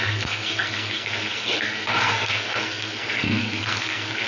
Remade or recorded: remade